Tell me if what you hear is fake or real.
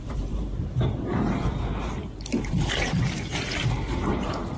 fake